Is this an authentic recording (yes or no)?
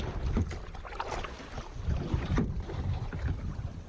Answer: no